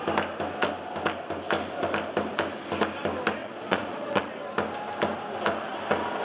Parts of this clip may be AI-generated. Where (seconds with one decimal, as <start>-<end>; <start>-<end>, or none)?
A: 3.4-4.3